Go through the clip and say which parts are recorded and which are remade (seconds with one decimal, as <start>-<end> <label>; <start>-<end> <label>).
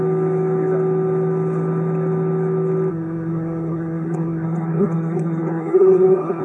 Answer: 0.0-2.9 recorded; 2.9-6.4 remade